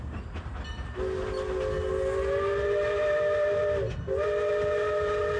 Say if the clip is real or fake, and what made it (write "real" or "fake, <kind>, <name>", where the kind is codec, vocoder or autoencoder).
real